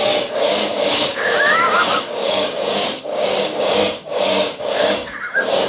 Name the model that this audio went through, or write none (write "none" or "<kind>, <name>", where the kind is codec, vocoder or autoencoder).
codec, DAC